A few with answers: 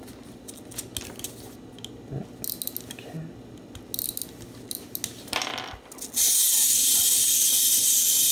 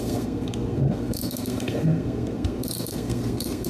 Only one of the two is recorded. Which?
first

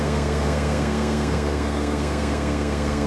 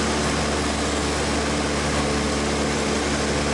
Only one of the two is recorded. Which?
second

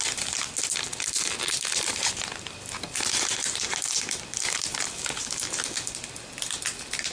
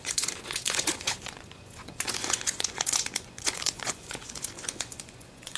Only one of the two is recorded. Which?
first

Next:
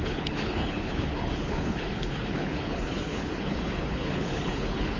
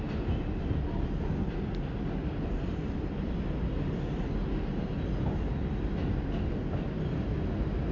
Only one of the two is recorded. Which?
second